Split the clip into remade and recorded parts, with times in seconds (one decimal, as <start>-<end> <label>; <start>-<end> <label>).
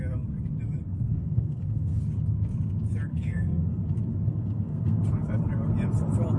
0.0-0.8 recorded; 0.8-2.0 remade; 2.0-3.1 recorded; 3.1-3.8 remade; 3.8-4.3 recorded; 4.3-5.0 remade; 5.0-6.4 recorded